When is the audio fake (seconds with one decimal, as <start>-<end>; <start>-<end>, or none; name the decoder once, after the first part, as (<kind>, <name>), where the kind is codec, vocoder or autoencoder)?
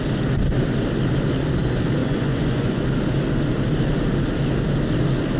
2.0-2.8 (vocoder, Vocos)